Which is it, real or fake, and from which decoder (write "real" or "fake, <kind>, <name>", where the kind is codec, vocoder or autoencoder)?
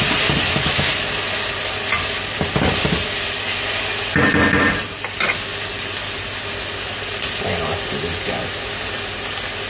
real